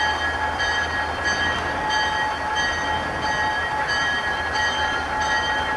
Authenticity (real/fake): real